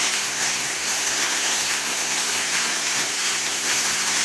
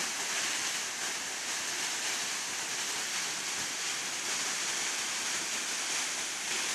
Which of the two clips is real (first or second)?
second